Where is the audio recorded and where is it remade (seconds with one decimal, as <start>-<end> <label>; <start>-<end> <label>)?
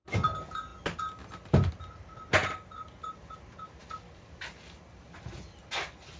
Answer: 0.0-6.2 recorded